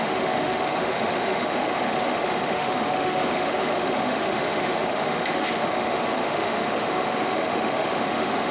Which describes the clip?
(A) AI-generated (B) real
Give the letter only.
A